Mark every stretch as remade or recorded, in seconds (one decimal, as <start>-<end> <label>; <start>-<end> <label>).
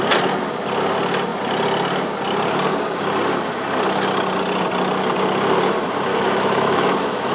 0.0-6.1 recorded; 6.1-7.3 remade